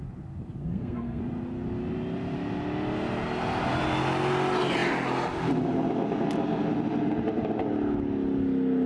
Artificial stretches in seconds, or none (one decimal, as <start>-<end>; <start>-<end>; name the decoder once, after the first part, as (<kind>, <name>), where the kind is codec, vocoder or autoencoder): 0.6-1.2 (codec, SNAC)